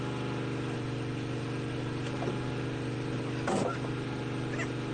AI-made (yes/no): no